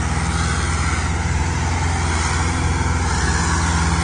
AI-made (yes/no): no